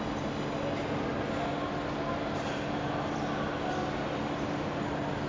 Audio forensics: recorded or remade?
recorded